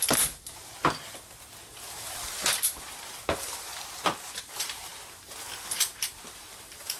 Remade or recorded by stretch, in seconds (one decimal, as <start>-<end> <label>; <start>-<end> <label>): 0.0-0.7 remade; 0.7-1.7 recorded; 1.7-3.7 remade; 3.7-4.3 recorded; 4.3-4.9 remade; 4.9-5.6 recorded; 5.6-7.0 remade